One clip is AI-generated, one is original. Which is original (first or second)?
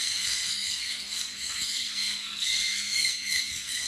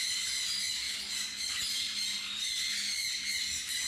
second